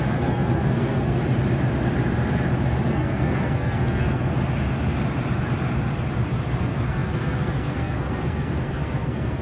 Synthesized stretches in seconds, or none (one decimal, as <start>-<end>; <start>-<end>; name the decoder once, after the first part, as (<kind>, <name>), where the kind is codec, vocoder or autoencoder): 0.0-1.2 (codec, SNAC); 2.9-4.3; 6.6-9.4